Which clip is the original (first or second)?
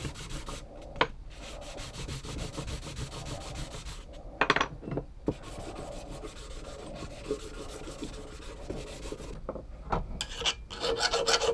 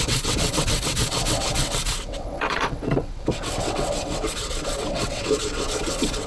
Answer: first